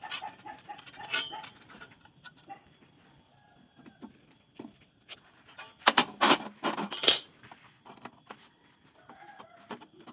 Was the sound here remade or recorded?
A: remade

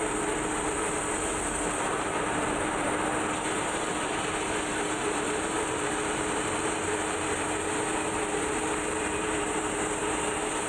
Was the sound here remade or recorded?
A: remade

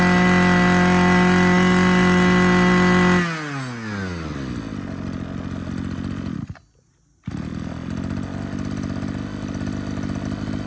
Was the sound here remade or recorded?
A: recorded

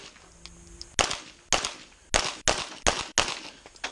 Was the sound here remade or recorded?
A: recorded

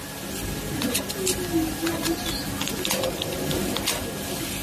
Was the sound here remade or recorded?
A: recorded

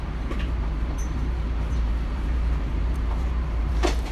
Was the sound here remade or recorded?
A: remade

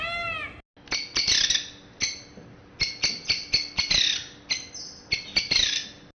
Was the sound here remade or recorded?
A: recorded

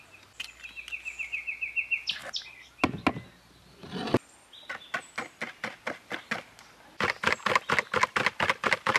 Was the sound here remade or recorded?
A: recorded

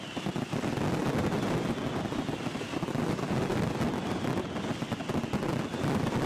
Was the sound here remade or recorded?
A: recorded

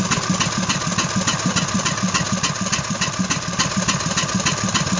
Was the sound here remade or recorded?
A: recorded